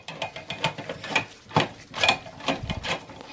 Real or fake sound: real